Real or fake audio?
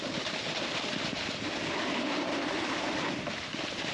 real